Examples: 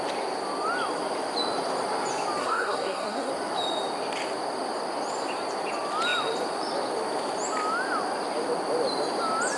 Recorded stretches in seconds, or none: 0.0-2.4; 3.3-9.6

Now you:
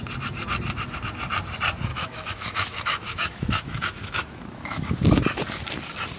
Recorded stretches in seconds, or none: 0.0-1.9; 4.9-6.2

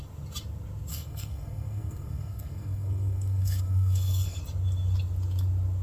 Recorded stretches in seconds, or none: 0.0-0.9; 4.4-5.8